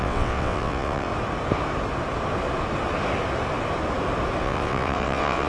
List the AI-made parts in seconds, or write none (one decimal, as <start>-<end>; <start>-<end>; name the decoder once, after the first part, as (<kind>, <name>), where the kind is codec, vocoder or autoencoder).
0.0-1.1 (vocoder, WaveNeXt); 4.4-5.5